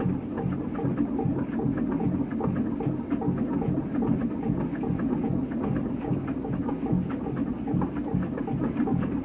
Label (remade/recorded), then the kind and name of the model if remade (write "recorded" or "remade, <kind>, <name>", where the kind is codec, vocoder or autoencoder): recorded